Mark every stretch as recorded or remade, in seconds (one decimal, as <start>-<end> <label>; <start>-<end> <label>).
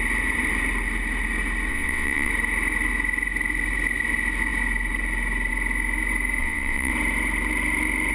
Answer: 0.0-1.7 recorded; 1.7-2.3 remade; 2.3-6.4 recorded; 6.4-6.9 remade; 6.9-8.1 recorded